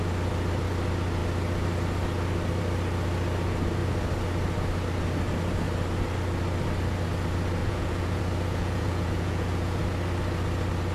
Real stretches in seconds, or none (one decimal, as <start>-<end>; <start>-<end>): 0.0-7.6; 8.2-8.6; 9.8-10.9